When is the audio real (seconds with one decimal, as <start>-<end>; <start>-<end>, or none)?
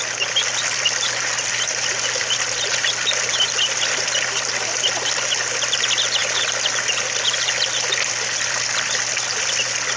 0.0-10.0